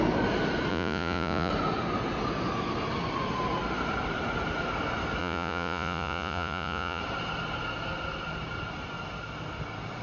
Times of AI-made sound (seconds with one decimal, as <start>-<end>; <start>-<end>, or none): 0.7-1.5; 5.2-7.0